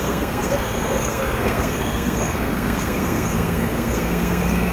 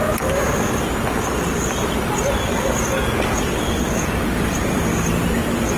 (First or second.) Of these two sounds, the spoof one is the first